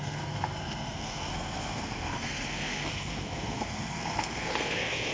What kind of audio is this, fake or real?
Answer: fake